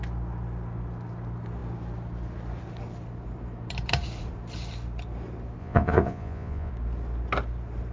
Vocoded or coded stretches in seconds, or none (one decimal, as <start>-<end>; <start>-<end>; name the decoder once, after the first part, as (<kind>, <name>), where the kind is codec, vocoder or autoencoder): 5.6-6.7 (vocoder, Vocos)